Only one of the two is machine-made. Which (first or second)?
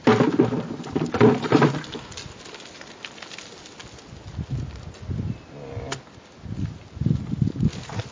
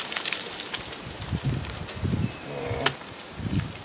second